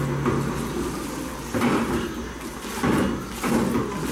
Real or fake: real